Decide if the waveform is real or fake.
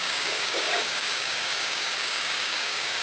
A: fake